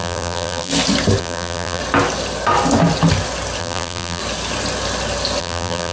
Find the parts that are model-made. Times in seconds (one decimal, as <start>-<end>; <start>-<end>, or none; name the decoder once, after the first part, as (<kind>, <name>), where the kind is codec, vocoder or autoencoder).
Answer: 0.0-0.7 (vocoder, BigVGAN v2); 1.2-1.8; 3.6-4.2; 5.4-5.9